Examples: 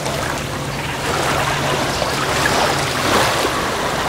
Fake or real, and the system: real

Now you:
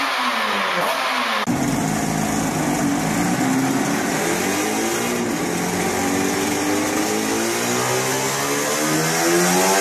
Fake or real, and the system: real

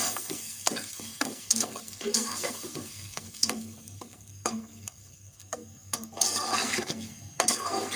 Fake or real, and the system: fake, codec, SNAC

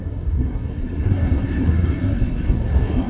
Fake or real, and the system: fake, codec, SNAC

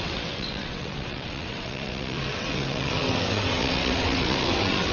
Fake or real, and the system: fake, vocoder, WaveNeXt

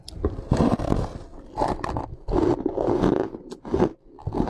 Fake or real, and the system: real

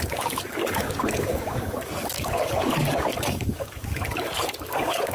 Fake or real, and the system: fake, codec, DAC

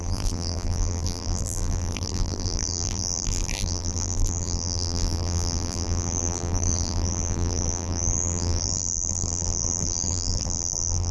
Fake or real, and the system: fake, vocoder, BigVGAN v2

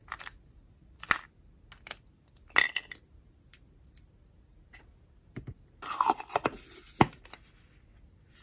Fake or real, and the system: real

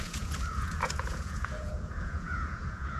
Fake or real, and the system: fake, vocoder, Vocos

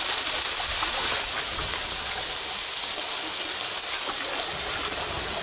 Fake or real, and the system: real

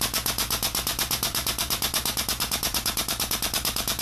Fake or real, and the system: fake, vocoder, BigVGAN v2